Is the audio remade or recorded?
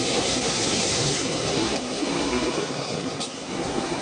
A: remade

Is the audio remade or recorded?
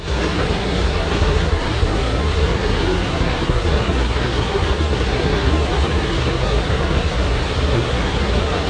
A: remade